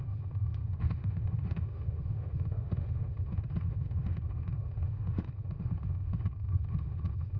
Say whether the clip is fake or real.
fake